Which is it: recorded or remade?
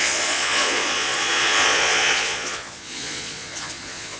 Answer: remade